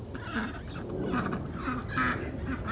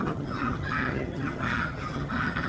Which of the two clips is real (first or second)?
first